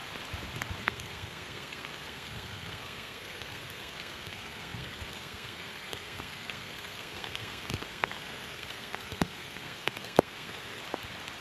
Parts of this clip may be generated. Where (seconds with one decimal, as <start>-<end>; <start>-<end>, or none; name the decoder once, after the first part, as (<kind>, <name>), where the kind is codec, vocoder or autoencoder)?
0.8-10.8 (codec, SNAC)